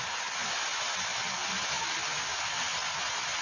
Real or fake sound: real